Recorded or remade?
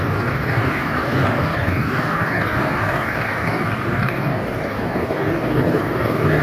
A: remade